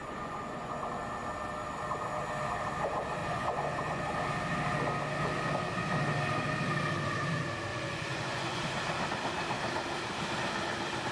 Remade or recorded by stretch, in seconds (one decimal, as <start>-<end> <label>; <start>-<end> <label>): 0.0-0.8 remade; 0.8-3.2 recorded; 3.2-4.1 remade; 4.1-7.7 recorded; 7.7-8.6 remade; 8.6-11.1 recorded